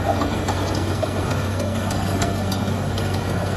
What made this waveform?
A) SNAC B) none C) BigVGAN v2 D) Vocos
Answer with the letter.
A